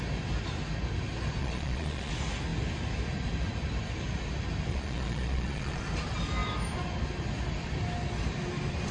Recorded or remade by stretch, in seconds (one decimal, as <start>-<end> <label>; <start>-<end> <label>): 0.0-1.4 recorded; 1.4-2.1 remade; 2.1-4.7 recorded; 4.7-5.8 remade; 5.8-8.9 recorded